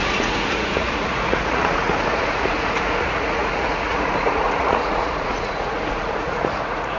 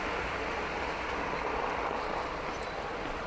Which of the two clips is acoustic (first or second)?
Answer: second